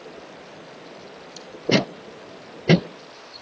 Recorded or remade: recorded